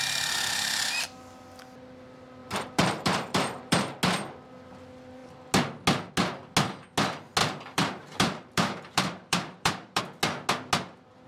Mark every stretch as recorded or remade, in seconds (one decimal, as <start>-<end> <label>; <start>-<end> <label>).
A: 0.0-2.4 recorded; 2.4-3.8 remade; 3.8-7.4 recorded; 7.4-10.0 remade; 10.0-11.3 recorded